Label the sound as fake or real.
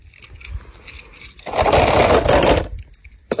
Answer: real